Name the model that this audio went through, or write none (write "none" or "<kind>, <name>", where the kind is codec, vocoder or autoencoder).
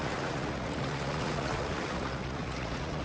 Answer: vocoder, Vocos